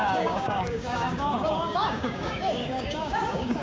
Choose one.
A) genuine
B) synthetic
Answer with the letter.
B